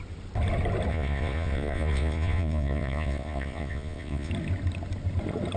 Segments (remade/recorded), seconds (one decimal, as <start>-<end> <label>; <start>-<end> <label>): 0.0-0.9 recorded; 0.9-4.3 remade; 4.3-5.6 recorded